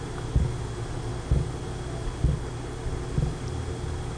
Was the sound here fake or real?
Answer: real